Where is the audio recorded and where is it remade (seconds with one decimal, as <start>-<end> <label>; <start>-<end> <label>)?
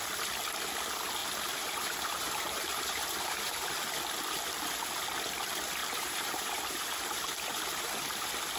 0.0-1.2 recorded; 1.2-3.7 remade; 3.7-5.8 recorded; 5.8-7.9 remade; 7.9-8.6 recorded